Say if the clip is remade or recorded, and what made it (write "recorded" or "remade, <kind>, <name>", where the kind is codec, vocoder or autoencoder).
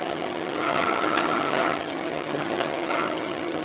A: remade, vocoder, HiFi-GAN